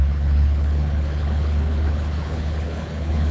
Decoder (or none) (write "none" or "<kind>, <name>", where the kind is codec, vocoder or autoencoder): codec, HILCodec